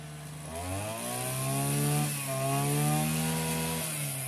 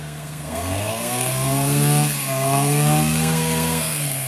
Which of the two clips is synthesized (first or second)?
second